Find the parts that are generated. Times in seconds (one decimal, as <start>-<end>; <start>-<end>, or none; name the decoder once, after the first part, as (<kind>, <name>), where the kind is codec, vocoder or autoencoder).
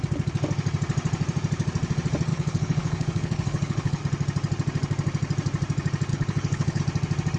2.3-4.0 (codec, HILCodec); 6.1-6.8